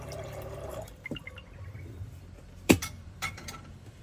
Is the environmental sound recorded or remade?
remade